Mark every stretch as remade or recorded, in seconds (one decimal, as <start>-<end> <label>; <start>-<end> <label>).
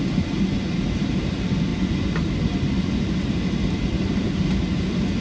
0.0-5.2 recorded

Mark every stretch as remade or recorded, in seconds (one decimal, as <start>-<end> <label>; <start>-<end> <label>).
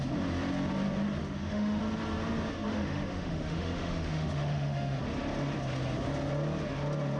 0.0-1.2 recorded; 1.2-1.8 remade; 1.8-2.7 recorded; 2.7-5.0 remade; 5.0-7.2 recorded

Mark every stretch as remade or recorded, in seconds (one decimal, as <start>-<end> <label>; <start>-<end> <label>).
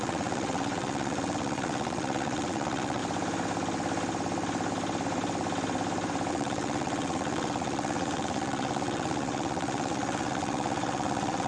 0.0-3.0 remade; 3.0-6.3 recorded; 6.3-11.5 remade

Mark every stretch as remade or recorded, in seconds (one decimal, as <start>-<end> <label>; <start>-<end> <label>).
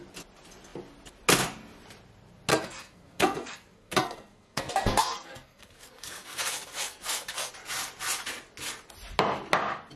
0.0-2.5 recorded; 2.5-7.5 remade; 7.5-10.0 recorded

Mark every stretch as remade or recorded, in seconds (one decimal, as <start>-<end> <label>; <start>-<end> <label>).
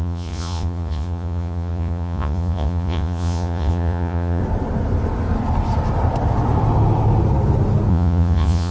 0.0-4.4 remade; 4.4-7.9 recorded; 7.9-8.7 remade